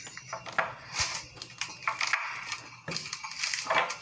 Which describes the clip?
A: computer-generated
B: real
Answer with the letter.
B